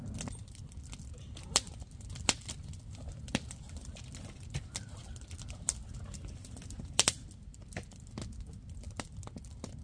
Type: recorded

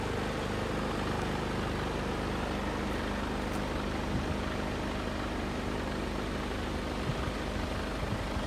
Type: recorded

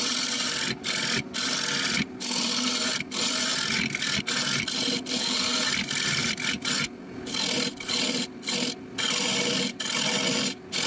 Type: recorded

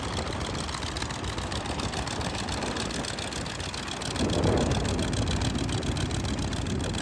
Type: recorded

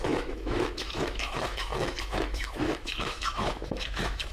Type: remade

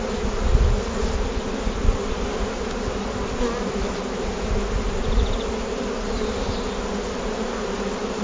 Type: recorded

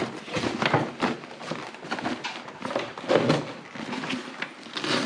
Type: recorded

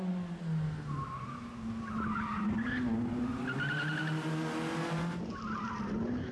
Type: recorded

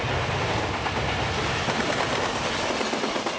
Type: recorded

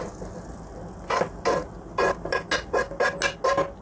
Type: recorded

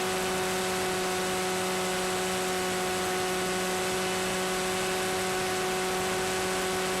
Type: recorded